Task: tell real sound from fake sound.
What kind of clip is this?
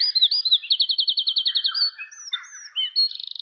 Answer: real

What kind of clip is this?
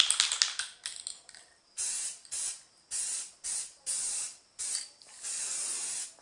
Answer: real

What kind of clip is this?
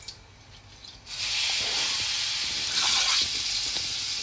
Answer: real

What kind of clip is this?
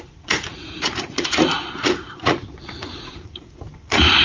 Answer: fake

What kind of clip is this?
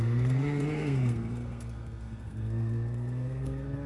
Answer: fake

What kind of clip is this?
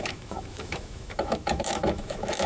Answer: fake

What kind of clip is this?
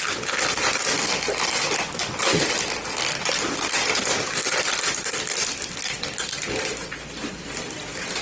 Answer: real